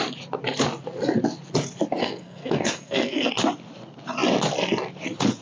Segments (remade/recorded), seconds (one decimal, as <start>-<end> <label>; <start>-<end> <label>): 0.0-2.0 recorded; 2.0-3.3 remade; 3.3-5.4 recorded